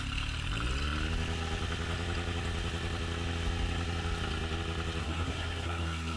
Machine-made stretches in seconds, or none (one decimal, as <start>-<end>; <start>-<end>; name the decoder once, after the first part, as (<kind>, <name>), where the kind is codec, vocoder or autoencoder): 5.0-6.2 (codec, SNAC)